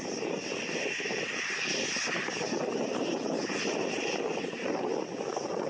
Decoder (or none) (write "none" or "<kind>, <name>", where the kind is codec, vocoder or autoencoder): none